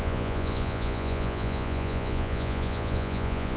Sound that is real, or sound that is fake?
fake